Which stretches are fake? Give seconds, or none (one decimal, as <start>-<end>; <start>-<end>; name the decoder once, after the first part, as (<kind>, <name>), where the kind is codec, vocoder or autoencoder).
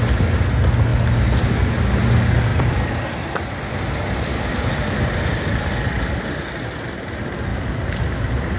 2.5-6.8 (vocoder, BigVGAN v2)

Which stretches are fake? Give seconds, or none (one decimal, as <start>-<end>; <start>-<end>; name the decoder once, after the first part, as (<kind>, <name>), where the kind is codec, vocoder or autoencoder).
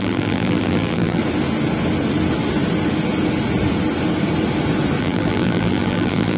0.0-1.2 (vocoder, BigVGAN v2); 5.0-6.4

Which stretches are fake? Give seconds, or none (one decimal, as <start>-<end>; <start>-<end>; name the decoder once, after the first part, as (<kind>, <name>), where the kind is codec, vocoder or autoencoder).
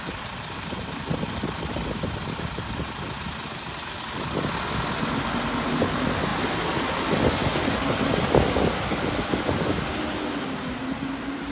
none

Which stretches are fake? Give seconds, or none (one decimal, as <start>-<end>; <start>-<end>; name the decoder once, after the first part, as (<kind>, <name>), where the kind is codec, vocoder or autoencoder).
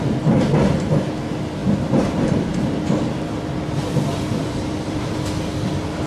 1.6-5.3 (vocoder, BigVGAN v2)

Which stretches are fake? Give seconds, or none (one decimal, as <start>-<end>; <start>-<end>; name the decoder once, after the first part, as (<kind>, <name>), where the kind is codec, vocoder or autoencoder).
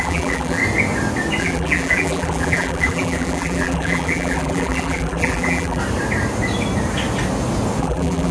0.0-0.6 (vocoder, BigVGAN v2); 1.4-5.8; 7.8-8.3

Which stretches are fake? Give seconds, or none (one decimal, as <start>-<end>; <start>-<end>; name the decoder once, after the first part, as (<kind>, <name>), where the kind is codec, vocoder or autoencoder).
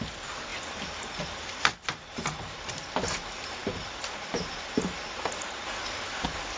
0.0-0.5 (vocoder, BigVGAN v2); 1.2-6.6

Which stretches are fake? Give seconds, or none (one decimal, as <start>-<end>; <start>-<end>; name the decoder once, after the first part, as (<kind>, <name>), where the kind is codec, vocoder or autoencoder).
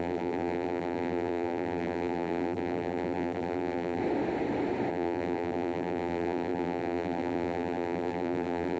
0.0-4.0 (vocoder, BigVGAN v2); 4.9-8.8